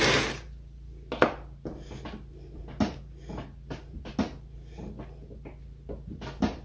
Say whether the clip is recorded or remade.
recorded